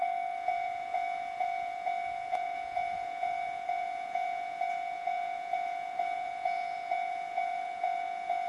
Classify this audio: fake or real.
fake